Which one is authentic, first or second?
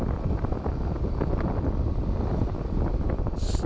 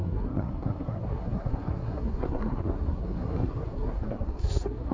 first